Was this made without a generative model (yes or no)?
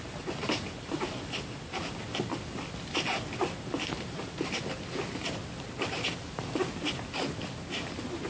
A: yes